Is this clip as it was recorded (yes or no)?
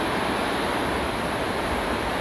yes